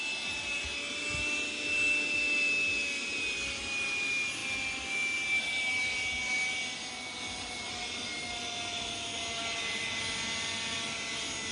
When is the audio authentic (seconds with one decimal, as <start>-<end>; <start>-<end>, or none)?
0.0-11.5